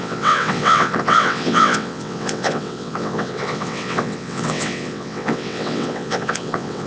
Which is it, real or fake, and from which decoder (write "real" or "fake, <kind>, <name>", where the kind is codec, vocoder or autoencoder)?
fake, vocoder, WaveNeXt